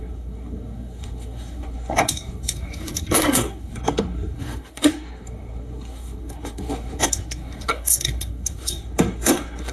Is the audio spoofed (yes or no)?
yes